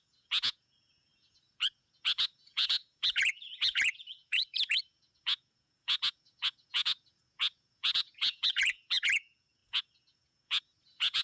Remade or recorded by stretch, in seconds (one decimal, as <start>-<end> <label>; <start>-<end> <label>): 0.0-11.2 remade